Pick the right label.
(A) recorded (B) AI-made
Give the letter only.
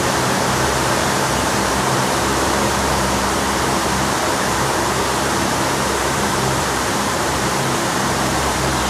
B